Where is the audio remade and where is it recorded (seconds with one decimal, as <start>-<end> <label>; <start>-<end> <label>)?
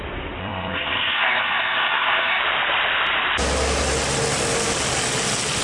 0.0-0.4 recorded; 0.4-2.4 remade; 2.4-5.6 recorded